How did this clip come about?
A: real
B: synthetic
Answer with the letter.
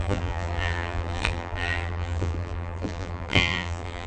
B